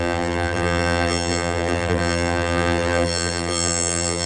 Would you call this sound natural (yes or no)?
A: no